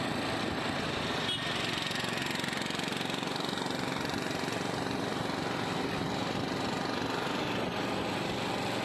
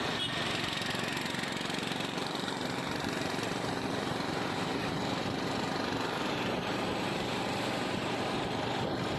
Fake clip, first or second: second